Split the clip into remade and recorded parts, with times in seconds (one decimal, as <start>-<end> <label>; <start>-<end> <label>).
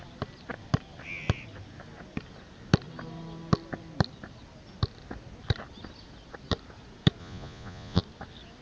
0.0-7.2 recorded; 7.2-8.0 remade; 8.0-8.6 recorded